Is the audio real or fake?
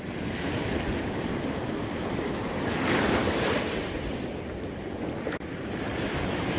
fake